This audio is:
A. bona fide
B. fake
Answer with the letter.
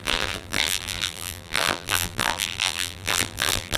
B